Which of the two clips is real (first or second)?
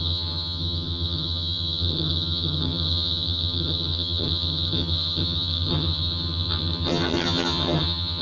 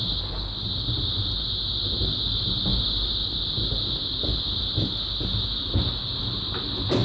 second